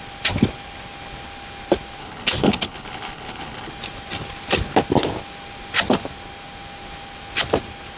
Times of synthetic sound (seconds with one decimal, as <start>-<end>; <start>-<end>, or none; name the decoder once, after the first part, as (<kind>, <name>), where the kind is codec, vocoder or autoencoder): 2.0-3.7 (codec, HILCodec)